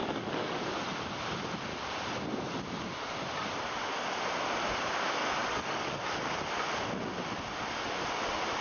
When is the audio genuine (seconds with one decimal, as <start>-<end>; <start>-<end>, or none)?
0.7-5.4; 6.0-8.6